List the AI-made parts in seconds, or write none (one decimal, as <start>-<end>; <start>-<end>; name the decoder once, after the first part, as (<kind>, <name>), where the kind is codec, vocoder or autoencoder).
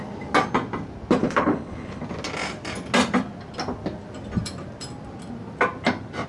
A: 1.2-2.0 (codec, HILCodec)